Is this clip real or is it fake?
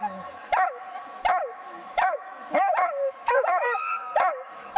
fake